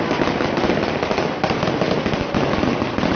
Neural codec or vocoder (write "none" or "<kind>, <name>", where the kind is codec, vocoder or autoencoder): none